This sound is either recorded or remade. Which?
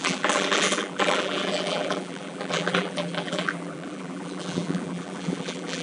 remade